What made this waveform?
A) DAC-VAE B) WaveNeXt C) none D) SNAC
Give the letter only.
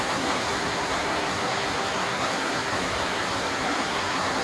D